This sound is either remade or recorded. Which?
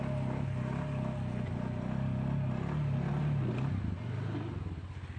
recorded